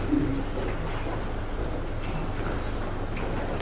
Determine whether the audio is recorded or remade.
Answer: recorded